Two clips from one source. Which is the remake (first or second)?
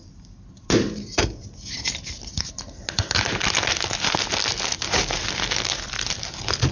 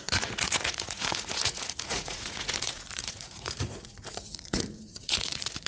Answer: second